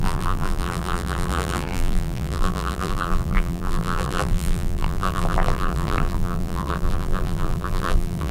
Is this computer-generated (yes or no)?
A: yes